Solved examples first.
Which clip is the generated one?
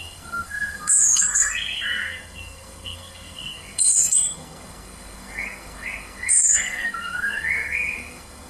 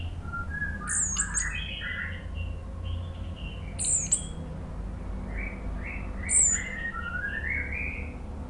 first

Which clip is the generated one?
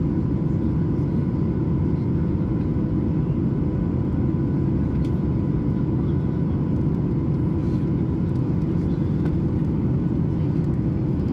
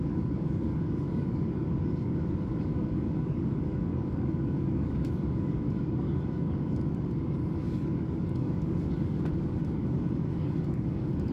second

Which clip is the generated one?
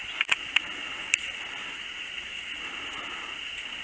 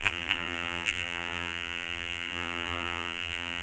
second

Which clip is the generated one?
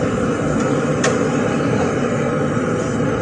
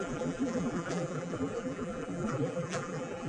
second